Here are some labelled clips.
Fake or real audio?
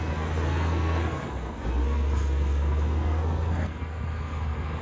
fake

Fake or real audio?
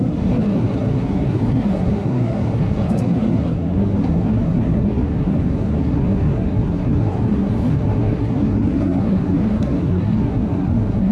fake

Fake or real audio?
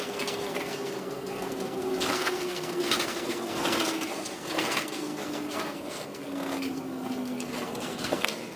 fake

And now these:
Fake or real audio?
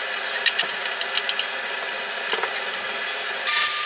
real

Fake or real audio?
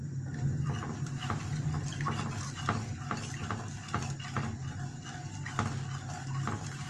real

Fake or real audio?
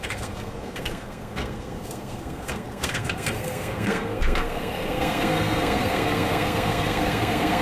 fake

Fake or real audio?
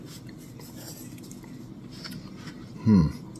real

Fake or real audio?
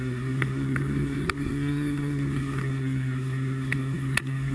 fake